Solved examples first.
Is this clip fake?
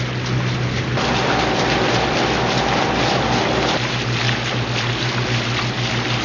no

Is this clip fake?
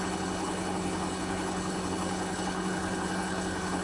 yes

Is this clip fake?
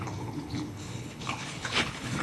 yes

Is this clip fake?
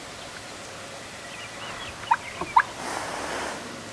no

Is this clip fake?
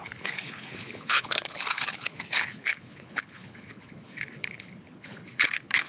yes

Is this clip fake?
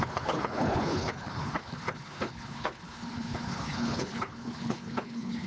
yes